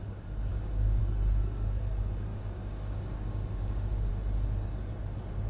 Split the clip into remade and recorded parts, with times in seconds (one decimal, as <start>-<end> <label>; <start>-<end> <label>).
0.0-0.5 recorded; 0.5-1.0 remade; 1.0-2.3 recorded; 2.3-4.1 remade; 4.1-5.5 recorded

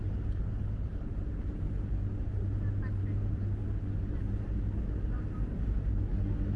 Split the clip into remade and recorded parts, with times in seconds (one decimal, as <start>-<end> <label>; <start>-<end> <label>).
0.0-0.5 recorded; 0.5-1.1 remade; 1.1-6.6 recorded